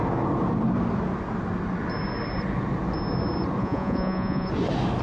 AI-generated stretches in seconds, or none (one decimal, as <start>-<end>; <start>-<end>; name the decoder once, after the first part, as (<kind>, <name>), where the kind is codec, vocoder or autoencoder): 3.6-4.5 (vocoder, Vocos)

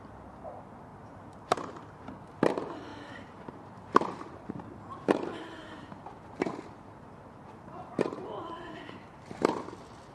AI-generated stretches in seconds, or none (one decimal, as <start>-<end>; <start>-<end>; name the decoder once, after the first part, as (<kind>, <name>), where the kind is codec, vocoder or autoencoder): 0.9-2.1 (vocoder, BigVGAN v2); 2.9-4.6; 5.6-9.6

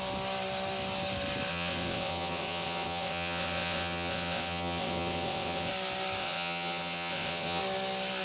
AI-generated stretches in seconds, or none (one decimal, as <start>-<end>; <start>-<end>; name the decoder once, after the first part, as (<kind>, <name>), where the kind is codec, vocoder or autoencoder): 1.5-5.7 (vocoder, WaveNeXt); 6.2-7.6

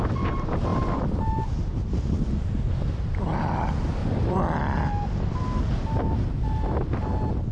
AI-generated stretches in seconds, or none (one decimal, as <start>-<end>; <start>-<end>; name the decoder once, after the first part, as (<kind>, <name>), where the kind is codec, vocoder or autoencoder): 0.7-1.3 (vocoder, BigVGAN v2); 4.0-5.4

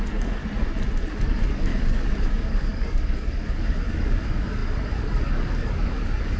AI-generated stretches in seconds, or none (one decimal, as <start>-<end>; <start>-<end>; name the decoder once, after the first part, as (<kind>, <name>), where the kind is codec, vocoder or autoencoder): 0.0-0.4 (codec, DAC); 1.2-6.4